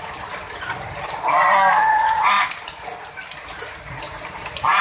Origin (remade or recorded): recorded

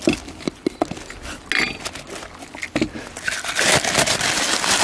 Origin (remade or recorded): recorded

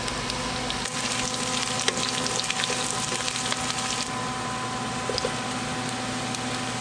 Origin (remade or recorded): recorded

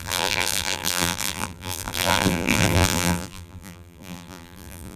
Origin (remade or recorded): remade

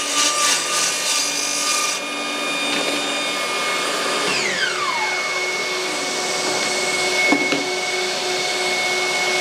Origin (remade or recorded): recorded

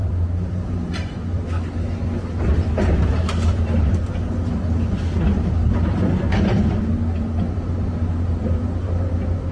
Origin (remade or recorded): remade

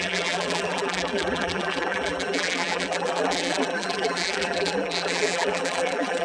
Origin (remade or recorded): remade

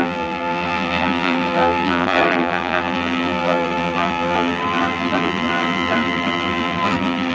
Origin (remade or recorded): remade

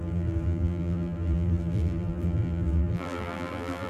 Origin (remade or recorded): remade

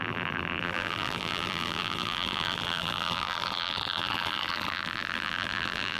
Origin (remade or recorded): remade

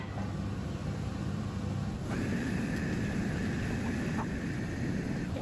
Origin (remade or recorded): recorded